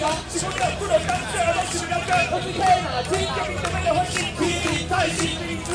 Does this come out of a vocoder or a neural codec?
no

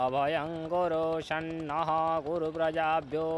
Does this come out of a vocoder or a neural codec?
no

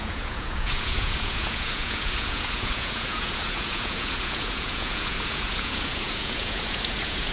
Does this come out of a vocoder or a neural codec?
yes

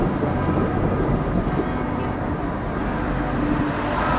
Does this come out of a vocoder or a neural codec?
no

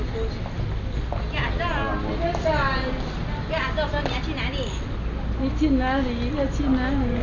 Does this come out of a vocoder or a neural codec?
no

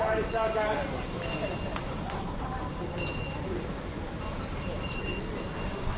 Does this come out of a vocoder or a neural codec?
yes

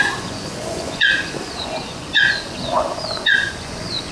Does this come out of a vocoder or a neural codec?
yes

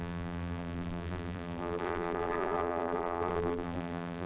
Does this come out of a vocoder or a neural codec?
yes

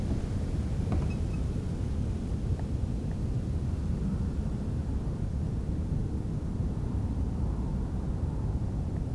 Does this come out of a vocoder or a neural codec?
no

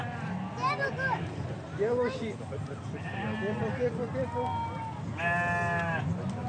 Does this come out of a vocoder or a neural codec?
no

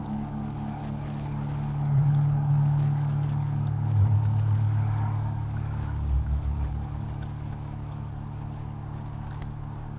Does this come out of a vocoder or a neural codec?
yes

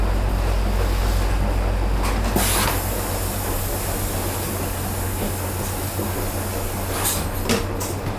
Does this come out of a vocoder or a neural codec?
no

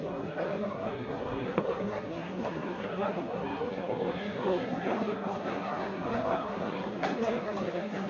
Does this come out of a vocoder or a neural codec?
yes